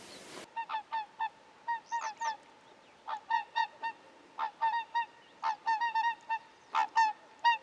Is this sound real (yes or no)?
yes